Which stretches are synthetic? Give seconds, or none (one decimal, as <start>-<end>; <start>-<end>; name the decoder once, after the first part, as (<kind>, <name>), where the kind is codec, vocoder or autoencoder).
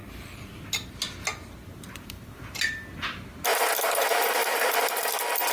0.0-0.9 (vocoder, BigVGAN v2); 1.3-2.4; 3.5-5.0